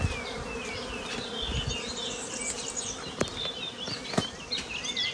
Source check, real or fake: real